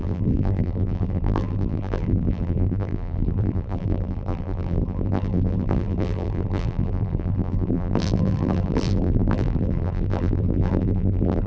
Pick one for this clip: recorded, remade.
remade